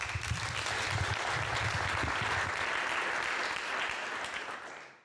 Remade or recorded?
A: recorded